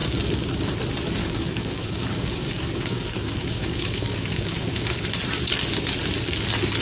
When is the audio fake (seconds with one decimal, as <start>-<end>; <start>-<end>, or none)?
1.2-5.0